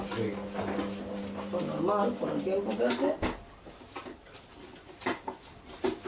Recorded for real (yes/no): yes